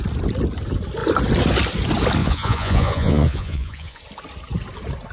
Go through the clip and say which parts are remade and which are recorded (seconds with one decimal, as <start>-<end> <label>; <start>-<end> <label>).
0.0-2.2 recorded; 2.2-4.0 remade; 4.0-5.1 recorded